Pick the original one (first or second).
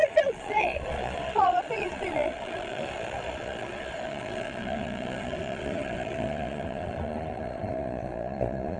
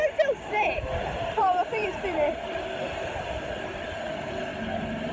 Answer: second